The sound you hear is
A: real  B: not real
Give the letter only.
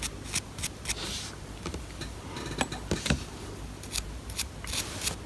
A